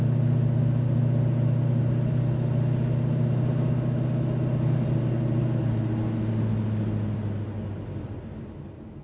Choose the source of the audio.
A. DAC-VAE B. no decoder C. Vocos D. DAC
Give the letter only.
B